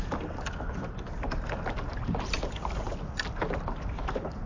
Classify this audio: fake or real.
real